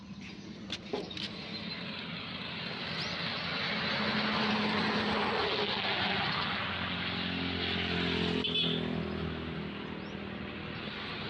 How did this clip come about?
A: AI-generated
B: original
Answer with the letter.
B